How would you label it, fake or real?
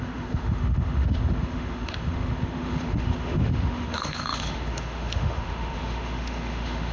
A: fake